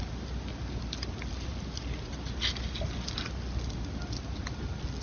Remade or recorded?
recorded